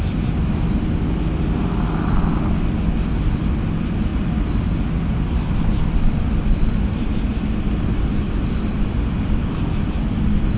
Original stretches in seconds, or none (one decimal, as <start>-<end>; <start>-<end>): 0.0-10.6